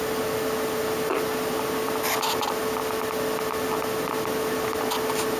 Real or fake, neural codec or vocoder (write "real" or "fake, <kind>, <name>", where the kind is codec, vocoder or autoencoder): real